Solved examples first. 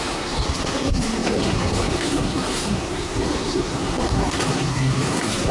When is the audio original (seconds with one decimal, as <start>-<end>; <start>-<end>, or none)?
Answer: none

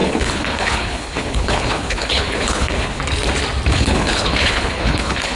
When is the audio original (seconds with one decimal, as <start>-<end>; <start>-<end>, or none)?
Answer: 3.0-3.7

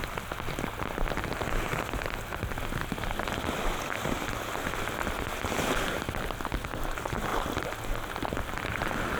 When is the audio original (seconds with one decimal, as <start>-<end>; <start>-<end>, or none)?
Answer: 0.0-9.2

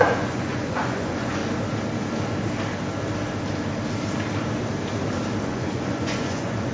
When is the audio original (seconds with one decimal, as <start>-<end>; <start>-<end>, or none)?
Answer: 1.4-5.4

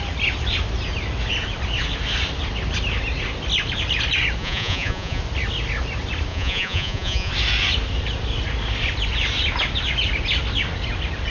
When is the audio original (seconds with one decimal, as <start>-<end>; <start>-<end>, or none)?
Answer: 0.0-4.4; 5.2-6.3; 7.3-11.3